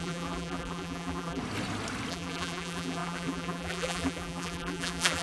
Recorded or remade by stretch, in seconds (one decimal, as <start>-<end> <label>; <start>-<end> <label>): 0.0-1.4 remade; 1.4-2.1 recorded; 2.1-5.2 remade

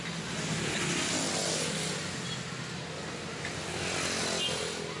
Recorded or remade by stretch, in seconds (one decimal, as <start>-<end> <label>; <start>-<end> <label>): 0.0-5.0 recorded

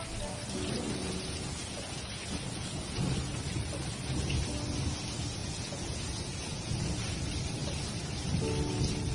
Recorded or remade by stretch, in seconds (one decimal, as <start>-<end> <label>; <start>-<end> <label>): 0.0-1.0 recorded; 1.0-3.0 remade; 3.0-5.4 recorded; 5.4-6.7 remade; 6.7-9.1 recorded

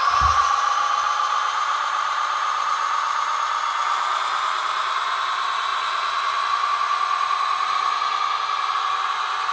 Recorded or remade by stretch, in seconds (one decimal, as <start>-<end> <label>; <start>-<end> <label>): 0.0-5.7 remade; 5.7-8.7 recorded; 8.7-9.5 remade